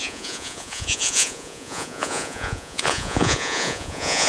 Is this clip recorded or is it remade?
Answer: remade